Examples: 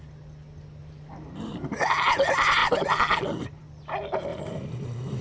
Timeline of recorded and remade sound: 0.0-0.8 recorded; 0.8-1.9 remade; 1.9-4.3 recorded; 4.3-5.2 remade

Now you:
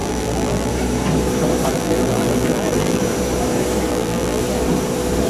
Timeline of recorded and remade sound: 0.0-0.7 remade; 0.7-1.7 recorded; 1.7-3.0 remade; 3.0-3.9 recorded; 3.9-4.4 remade; 4.4-5.3 recorded